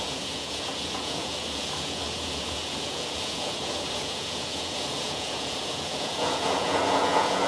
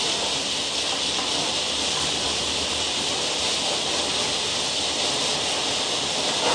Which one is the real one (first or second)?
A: second